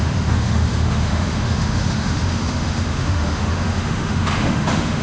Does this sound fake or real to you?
fake